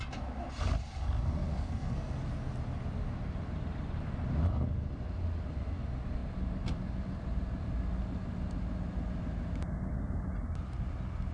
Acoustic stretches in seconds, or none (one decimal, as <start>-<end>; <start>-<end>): 0.0-1.4; 2.3-11.3